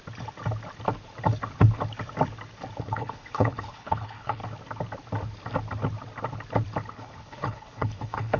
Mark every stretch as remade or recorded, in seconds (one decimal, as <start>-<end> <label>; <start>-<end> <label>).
0.0-2.8 recorded; 2.8-4.4 remade; 4.4-6.9 recorded; 6.9-8.4 remade